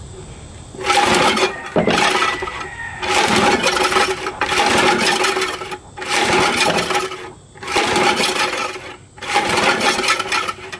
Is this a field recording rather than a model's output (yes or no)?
yes